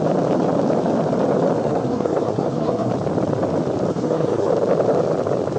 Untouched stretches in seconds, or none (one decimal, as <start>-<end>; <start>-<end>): 0.0-1.6; 2.9-3.9; 4.5-5.6